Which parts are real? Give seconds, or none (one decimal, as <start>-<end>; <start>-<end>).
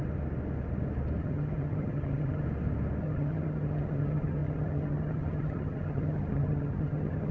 0.0-1.2; 2.4-3.0